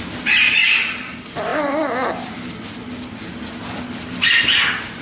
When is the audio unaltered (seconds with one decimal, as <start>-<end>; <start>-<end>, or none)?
0.0-5.0